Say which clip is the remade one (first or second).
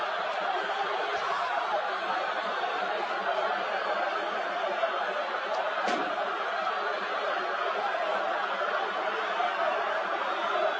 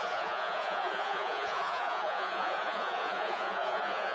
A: second